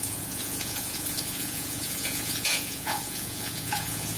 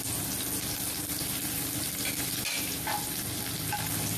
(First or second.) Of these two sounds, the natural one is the second